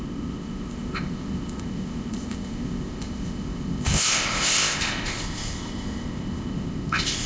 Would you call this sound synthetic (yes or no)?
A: yes